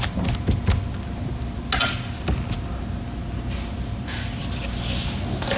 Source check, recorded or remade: recorded